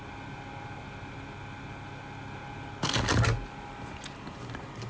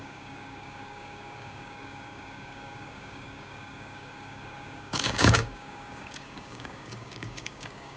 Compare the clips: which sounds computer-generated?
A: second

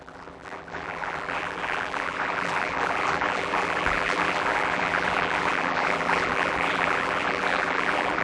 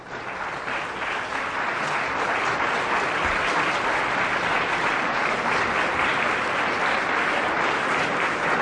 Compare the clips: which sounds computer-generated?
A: first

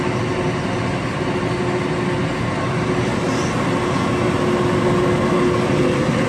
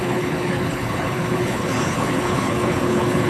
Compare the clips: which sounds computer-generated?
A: second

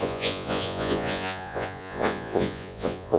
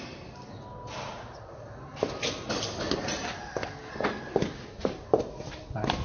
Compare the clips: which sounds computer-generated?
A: first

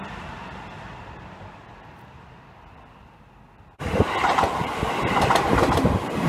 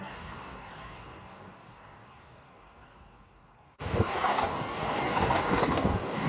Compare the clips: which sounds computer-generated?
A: second